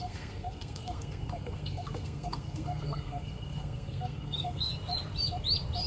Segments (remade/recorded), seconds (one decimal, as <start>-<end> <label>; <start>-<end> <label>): 0.0-4.7 remade; 4.7-5.9 recorded